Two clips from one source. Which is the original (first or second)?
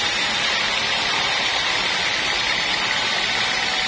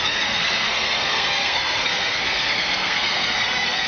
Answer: first